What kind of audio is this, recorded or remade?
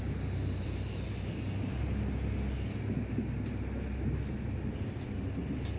recorded